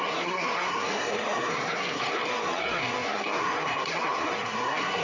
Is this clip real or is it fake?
fake